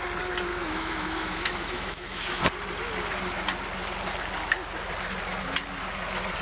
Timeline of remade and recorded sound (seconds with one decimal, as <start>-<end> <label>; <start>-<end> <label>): 0.0-0.5 recorded; 0.5-2.4 remade; 2.4-6.4 recorded